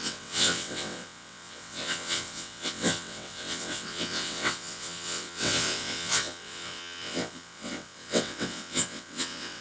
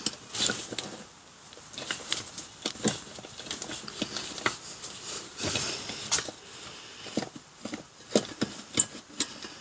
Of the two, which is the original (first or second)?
second